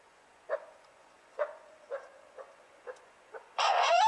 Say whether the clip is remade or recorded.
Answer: remade